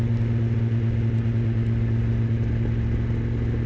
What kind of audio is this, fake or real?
real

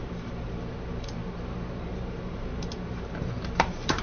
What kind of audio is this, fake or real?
fake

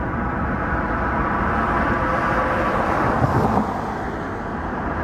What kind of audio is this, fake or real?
real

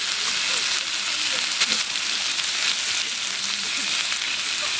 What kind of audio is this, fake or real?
real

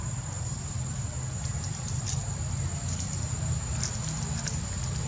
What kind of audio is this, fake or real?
real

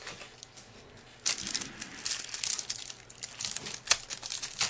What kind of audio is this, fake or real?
real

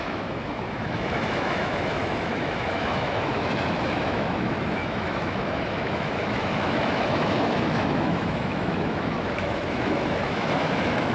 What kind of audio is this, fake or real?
fake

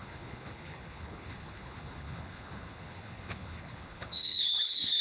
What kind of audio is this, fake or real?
fake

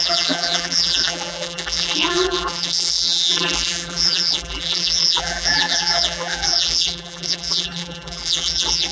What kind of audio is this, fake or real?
fake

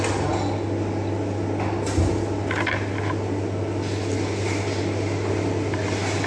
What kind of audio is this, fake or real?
real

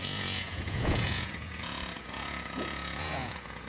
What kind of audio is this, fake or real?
fake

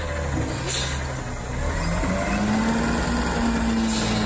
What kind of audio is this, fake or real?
real